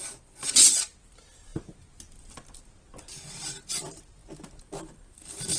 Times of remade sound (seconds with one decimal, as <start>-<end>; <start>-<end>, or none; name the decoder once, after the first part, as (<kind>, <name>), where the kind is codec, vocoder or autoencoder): none